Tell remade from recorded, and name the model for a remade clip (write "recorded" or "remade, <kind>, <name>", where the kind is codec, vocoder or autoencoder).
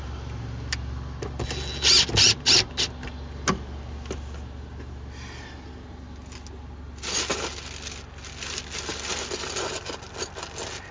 recorded